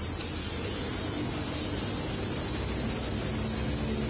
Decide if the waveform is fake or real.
real